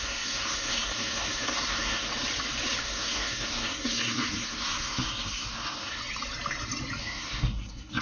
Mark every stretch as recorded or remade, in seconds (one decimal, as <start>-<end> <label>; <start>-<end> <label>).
0.0-2.1 remade; 2.1-2.8 recorded; 2.8-6.0 remade; 6.0-7.0 recorded; 7.0-8.0 remade